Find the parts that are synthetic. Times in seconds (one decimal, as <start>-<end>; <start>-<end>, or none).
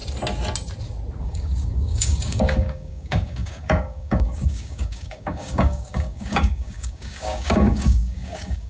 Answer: 1.2-8.7